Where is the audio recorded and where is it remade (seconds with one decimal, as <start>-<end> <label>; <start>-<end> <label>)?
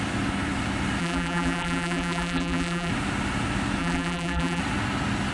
0.0-1.0 recorded; 1.0-2.9 remade; 2.9-3.8 recorded; 3.8-4.6 remade; 4.6-5.3 recorded